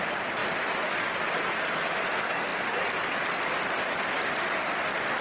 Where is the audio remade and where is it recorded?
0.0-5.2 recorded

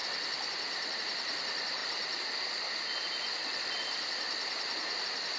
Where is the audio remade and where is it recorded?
0.0-5.4 recorded

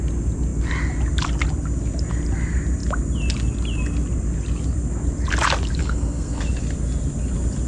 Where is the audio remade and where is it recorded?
0.0-5.8 recorded; 5.8-6.4 remade; 6.4-7.7 recorded

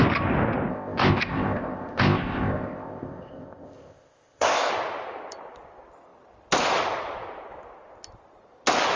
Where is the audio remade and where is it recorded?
0.0-0.7 recorded; 0.7-4.7 remade; 4.7-9.0 recorded

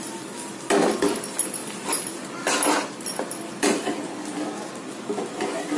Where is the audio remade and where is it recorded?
0.0-5.8 recorded

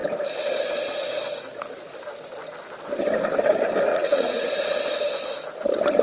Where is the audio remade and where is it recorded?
0.0-3.9 recorded; 3.9-4.6 remade; 4.6-6.0 recorded